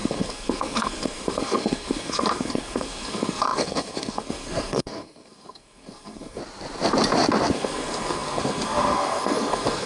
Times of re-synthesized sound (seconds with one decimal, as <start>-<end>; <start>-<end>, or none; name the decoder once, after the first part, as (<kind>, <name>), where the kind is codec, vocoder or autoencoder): 0.0-6.4 (codec, SNAC); 7.5-9.9